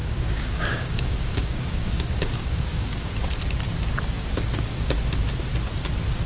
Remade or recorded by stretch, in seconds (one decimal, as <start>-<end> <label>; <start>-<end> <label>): 0.0-3.1 remade; 3.1-6.3 recorded